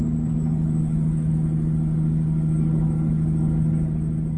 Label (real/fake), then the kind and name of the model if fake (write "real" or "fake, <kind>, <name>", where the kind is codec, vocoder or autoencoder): real